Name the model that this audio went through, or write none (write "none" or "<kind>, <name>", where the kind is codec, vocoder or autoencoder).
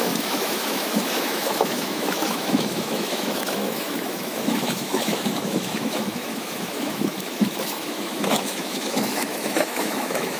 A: autoencoder, DAC-VAE